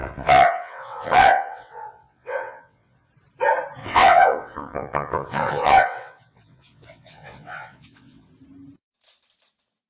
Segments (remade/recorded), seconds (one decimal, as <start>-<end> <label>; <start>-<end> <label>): 0.0-3.1 remade; 3.1-3.8 recorded; 3.8-8.3 remade; 8.3-9.9 recorded